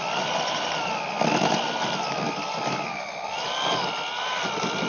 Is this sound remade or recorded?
recorded